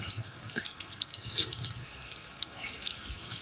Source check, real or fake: fake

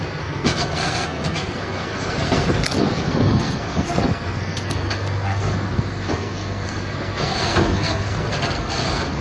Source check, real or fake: fake